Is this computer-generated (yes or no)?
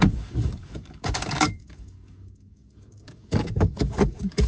yes